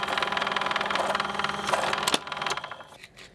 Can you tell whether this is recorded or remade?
recorded